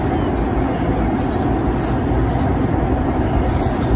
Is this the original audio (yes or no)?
yes